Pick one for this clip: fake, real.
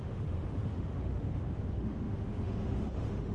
fake